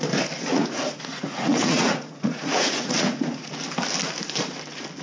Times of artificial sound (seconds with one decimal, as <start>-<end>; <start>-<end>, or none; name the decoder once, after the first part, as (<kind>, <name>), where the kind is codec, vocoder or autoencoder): 0.5-3.5 (vocoder, Vocos)